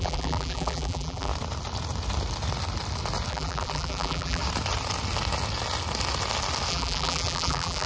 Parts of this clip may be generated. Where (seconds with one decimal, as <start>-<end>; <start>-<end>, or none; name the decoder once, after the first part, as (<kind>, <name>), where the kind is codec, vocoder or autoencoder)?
0.0-1.3 (vocoder, BigVGAN v2); 3.3-4.4; 6.7-7.9